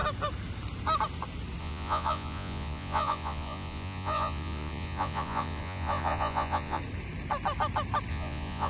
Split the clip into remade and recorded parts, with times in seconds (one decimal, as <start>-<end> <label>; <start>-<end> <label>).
0.0-1.6 recorded; 1.6-6.8 remade; 6.8-8.1 recorded; 8.1-8.7 remade